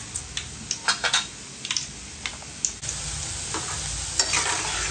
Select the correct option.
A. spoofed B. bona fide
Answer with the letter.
B